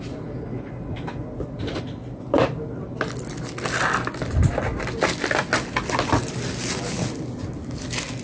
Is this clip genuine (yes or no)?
yes